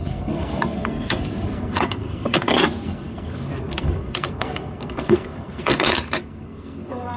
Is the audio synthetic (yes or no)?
yes